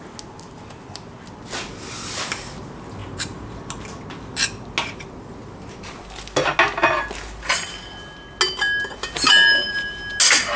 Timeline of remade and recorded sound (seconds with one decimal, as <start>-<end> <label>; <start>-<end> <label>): 0.0-3.0 recorded; 3.0-3.6 remade; 3.6-10.6 recorded